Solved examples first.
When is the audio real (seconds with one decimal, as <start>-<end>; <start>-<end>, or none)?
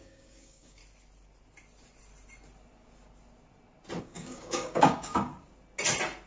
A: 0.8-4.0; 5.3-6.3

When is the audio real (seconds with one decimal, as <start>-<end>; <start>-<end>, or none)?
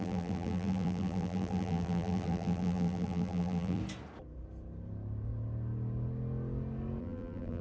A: 3.8-7.0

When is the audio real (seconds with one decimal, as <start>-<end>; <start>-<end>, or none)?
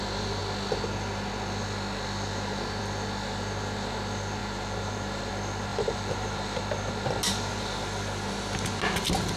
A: 0.0-4.4; 5.3-5.7; 6.6-9.4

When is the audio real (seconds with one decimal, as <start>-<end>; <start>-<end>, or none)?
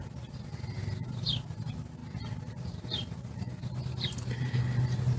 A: 0.0-5.2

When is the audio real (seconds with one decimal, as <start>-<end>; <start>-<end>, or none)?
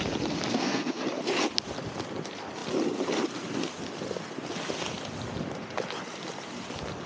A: 0.0-0.5; 1.0-7.1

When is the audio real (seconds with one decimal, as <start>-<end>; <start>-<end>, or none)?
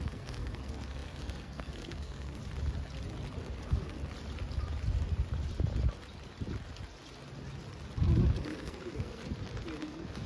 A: 2.4-3.4; 4.0-8.4; 9.2-9.8